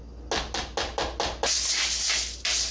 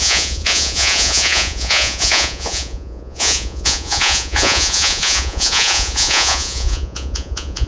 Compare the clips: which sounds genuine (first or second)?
first